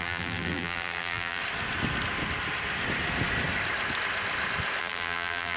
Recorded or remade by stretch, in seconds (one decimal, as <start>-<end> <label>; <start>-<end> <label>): 0.0-1.4 remade; 1.4-4.8 recorded; 4.8-5.6 remade